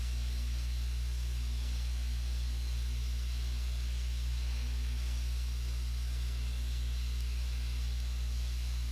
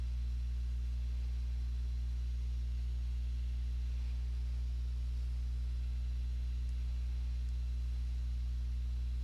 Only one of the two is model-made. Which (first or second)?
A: first